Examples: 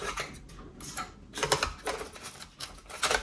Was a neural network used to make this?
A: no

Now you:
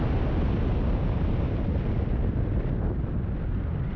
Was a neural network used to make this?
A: no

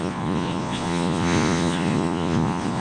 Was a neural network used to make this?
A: yes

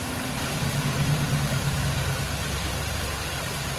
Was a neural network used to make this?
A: yes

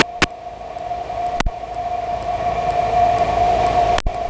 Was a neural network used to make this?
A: no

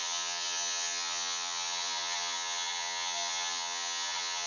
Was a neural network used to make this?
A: yes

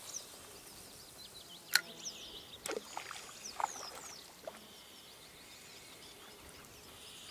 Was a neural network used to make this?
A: no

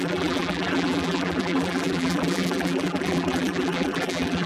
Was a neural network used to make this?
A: yes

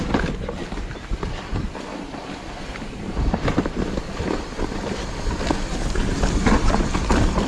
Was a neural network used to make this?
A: yes